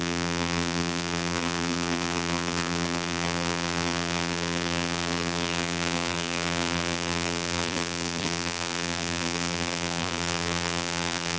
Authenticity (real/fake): fake